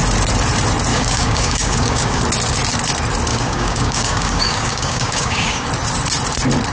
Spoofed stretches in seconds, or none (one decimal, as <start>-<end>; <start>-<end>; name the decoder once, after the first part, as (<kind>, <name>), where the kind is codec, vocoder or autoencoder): 0.9-2.2 (codec, DAC); 3.3-5.7